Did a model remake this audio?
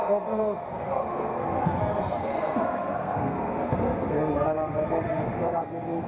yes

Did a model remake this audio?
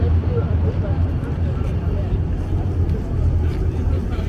no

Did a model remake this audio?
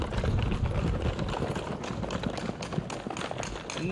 no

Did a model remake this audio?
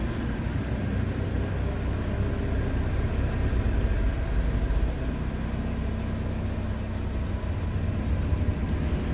no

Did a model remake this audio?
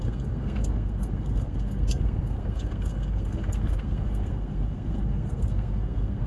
yes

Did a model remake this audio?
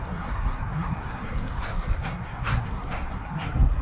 yes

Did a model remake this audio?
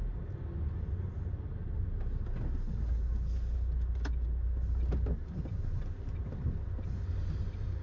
no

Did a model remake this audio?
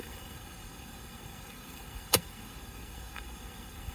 yes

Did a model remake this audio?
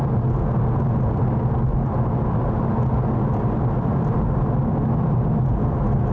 no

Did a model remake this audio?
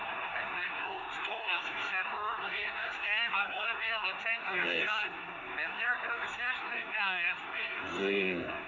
yes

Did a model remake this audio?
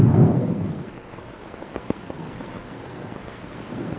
yes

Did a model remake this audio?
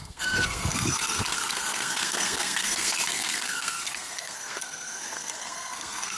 yes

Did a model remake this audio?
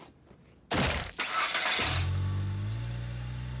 no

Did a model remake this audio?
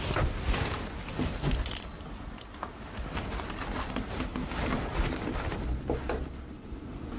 no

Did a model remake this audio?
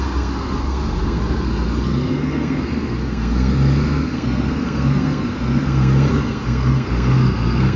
yes